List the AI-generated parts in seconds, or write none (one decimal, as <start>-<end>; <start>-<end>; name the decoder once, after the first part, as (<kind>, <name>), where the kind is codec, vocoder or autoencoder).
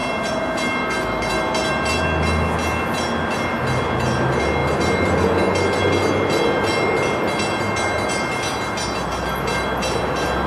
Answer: none